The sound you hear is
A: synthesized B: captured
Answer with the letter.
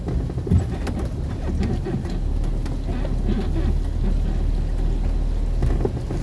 B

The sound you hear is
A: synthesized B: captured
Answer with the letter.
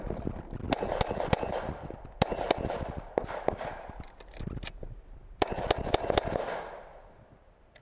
B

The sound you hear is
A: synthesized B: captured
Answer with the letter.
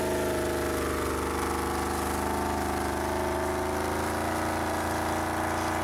B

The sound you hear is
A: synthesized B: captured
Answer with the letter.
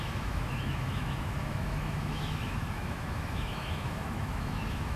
A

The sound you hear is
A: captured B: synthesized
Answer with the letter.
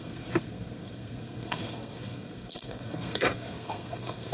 B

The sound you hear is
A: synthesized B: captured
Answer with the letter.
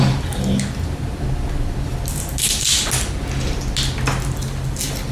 B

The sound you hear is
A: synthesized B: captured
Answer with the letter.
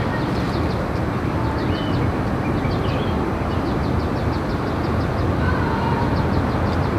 B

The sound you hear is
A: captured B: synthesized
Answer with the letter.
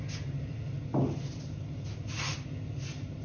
A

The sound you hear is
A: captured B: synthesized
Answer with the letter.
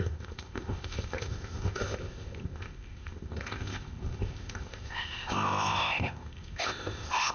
B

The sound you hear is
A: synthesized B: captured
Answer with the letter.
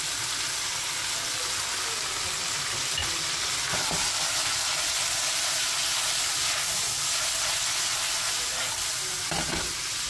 B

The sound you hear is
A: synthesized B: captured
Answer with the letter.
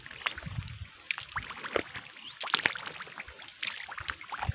B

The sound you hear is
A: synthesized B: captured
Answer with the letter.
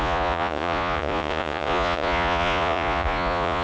A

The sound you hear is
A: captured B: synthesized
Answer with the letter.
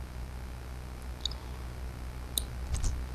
A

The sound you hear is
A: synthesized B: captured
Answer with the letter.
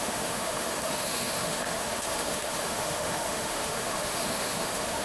A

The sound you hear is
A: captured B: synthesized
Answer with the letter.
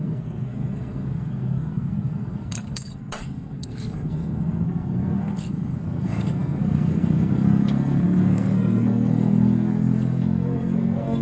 B